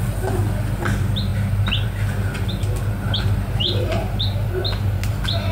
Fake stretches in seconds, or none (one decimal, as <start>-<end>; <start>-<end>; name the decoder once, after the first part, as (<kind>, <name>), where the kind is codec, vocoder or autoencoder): none